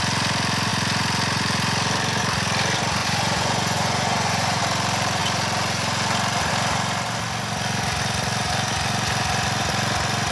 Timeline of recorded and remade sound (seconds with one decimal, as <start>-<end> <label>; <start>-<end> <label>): 0.0-3.0 recorded; 3.0-4.6 remade; 4.6-10.3 recorded